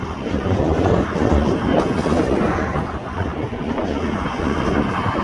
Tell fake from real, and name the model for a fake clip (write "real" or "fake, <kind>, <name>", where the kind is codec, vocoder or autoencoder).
fake, vocoder, Vocos